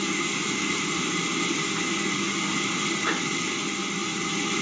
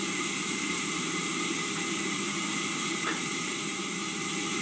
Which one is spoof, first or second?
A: second